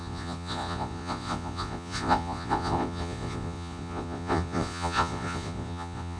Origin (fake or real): fake